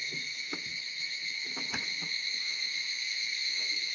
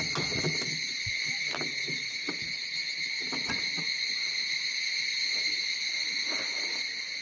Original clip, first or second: second